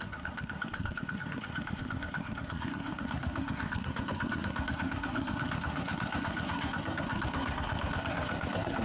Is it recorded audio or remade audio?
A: remade